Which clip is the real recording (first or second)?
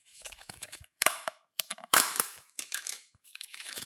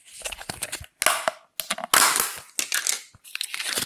second